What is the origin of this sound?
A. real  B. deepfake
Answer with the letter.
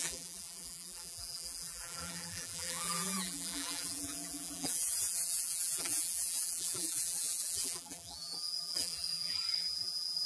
B